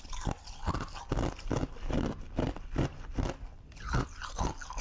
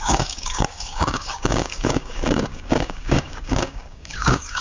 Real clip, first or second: first